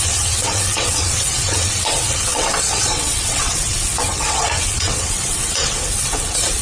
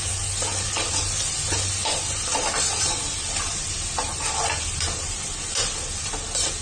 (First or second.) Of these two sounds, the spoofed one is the first